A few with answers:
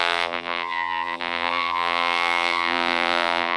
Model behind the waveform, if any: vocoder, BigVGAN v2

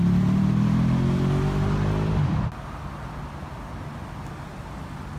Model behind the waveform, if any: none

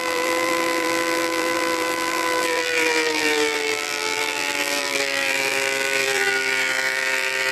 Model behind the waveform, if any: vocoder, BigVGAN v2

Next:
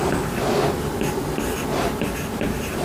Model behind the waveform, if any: none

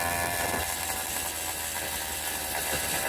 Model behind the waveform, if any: none